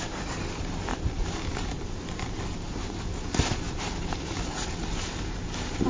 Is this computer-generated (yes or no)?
no